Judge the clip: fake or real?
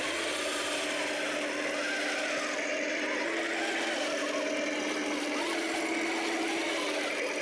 real